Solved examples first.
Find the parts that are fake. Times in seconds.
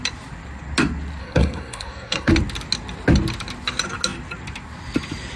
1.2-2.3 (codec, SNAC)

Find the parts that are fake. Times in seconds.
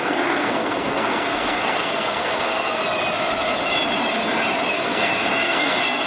0.0-2.8 (codec, SNAC); 4.7-6.1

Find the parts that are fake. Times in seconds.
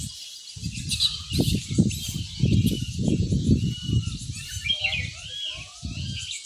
0.6-1.9 (vocoder, BigVGAN v2)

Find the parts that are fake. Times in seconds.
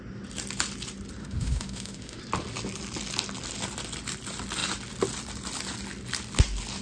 1.2-2.2 (autoencoder, DAC-VAE)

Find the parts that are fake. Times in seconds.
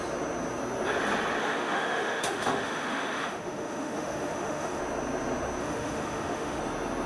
1.4-4.8 (autoencoder, DAC-VAE); 5.6-6.6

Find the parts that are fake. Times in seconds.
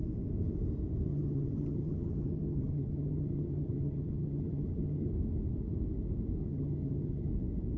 1.1-5.1 (vocoder, HiFi-GAN); 6.4-7.3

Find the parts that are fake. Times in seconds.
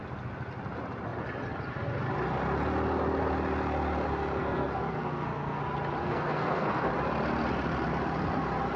4.4-5.6 (codec, SNAC); 6.0-6.9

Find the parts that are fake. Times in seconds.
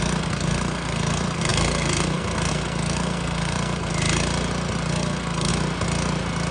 0.0-3.9 (codec, SNAC); 4.9-5.5